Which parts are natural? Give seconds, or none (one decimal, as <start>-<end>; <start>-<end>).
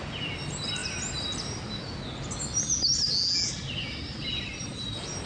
0.0-5.3